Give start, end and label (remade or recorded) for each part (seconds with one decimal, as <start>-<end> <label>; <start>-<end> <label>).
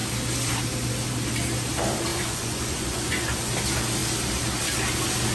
0.0-2.1 recorded; 2.1-3.5 remade; 3.5-5.3 recorded